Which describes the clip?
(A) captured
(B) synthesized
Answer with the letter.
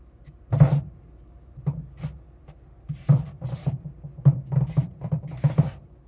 B